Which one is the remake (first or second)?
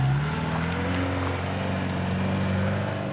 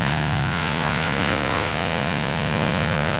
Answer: second